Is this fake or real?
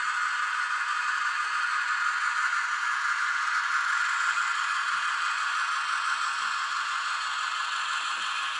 fake